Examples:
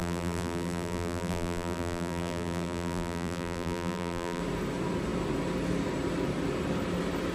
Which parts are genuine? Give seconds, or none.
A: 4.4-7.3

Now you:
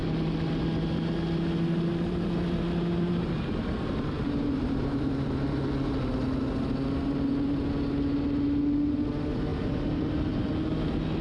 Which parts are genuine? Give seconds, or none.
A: 0.0-1.9; 5.5-9.5; 10.5-11.2

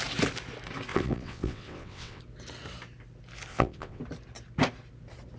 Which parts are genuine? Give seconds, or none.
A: 0.0-0.9; 2.2-3.5; 4.0-5.4

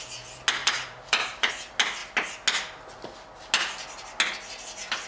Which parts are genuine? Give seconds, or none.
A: 0.0-0.6; 1.5-5.1

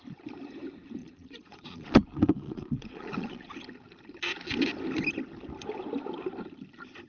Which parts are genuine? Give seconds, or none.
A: 0.0-1.0; 3.5-7.1

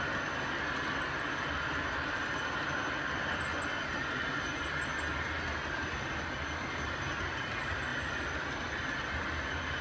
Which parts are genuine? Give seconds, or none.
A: 0.0-9.8